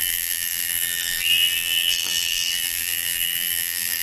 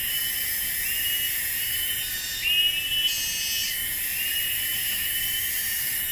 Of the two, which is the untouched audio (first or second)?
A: second